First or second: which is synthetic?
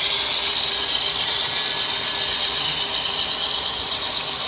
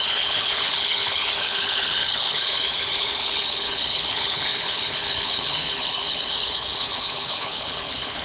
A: second